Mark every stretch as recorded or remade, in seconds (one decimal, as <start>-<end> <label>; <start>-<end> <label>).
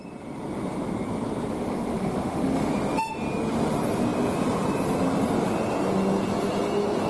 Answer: 0.0-1.5 recorded; 1.5-2.7 remade; 2.7-7.1 recorded